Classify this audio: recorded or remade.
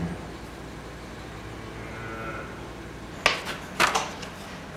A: recorded